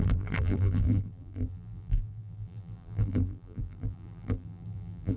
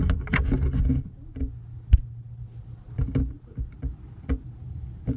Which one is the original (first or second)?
second